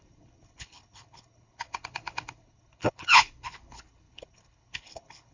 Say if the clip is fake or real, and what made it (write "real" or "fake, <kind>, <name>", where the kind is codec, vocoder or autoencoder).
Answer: fake, codec, HILCodec